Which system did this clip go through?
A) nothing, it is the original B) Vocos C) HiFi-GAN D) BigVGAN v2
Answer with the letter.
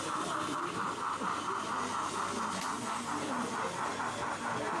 A